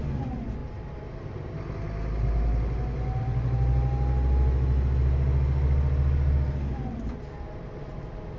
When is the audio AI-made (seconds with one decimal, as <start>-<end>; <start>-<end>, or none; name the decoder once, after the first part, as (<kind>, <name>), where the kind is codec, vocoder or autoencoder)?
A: none